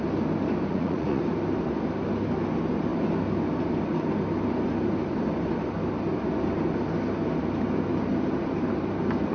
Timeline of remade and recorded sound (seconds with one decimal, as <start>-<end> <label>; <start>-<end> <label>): 0.0-0.7 recorded; 0.7-1.2 remade; 1.2-9.3 recorded